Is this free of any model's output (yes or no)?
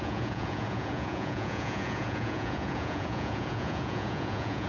no